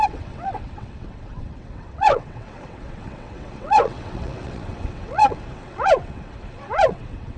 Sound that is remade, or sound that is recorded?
remade